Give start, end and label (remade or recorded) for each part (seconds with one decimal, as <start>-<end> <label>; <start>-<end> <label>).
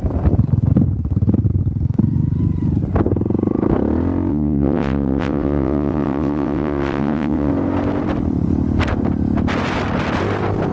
0.0-4.3 recorded; 4.3-7.5 remade; 7.5-10.7 recorded